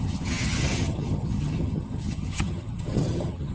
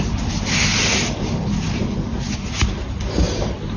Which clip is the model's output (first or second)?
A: first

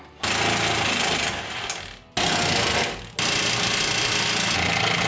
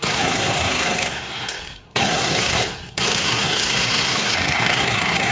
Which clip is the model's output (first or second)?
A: second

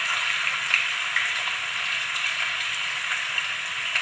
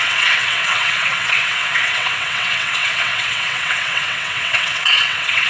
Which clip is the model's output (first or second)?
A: second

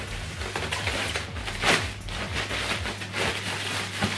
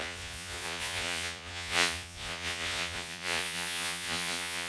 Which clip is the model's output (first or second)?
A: second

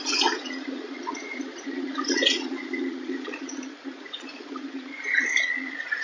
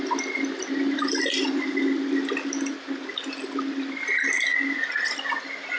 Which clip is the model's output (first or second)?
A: first